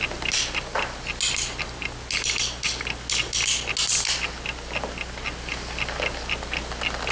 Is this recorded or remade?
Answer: recorded